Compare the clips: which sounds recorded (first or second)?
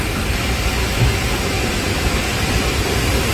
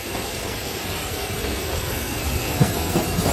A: first